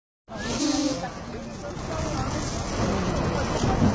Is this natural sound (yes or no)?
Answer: yes